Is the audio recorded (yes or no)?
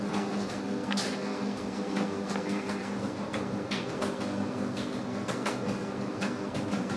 no